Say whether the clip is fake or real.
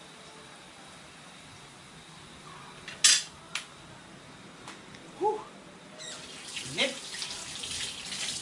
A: real